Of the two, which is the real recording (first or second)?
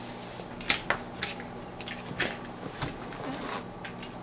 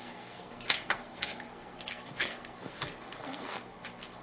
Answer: first